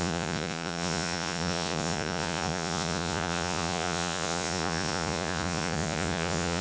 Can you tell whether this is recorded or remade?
remade